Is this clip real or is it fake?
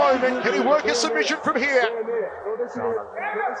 real